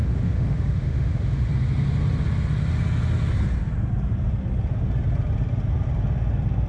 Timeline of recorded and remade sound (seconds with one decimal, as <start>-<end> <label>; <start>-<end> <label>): 0.0-1.5 remade; 1.5-6.7 recorded